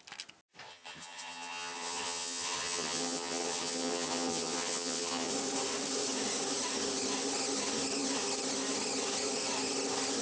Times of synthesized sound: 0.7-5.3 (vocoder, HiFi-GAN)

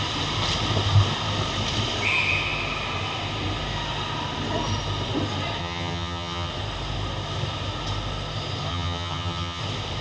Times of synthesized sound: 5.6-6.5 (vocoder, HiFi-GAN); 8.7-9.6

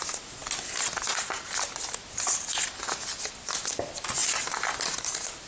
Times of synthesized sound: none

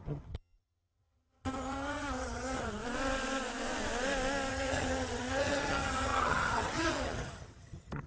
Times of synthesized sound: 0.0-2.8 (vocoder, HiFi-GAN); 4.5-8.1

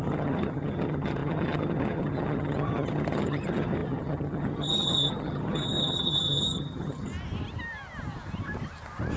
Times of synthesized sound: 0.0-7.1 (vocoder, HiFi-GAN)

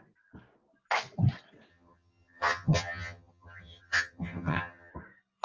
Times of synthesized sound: 1.7-4.9 (vocoder, HiFi-GAN)

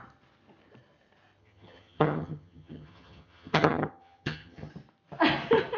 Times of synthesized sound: 1.4-4.7 (vocoder, HiFi-GAN)

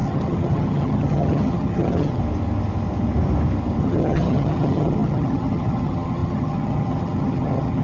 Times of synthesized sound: 0.0-2.2 (vocoder, HiFi-GAN); 3.8-7.8